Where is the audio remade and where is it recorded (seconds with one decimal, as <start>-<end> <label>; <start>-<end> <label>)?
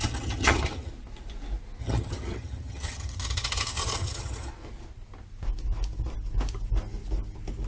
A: 0.0-0.9 remade; 0.9-1.8 recorded; 1.8-4.5 remade; 4.5-7.7 recorded